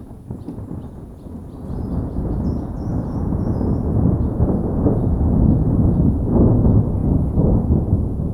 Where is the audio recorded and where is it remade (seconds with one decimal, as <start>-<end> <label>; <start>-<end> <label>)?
0.0-1.4 remade; 1.4-2.0 recorded; 2.0-8.3 remade